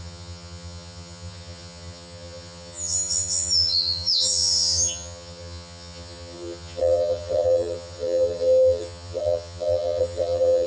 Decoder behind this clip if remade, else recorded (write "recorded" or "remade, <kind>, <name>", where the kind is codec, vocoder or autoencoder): remade, vocoder, HiFi-GAN